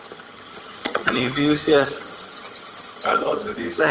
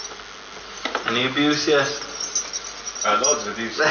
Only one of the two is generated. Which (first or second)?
first